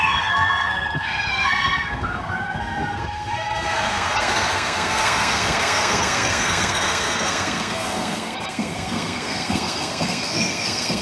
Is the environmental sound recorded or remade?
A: remade